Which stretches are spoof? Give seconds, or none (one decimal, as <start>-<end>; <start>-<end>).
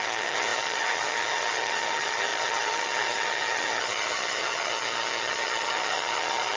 0.0-6.6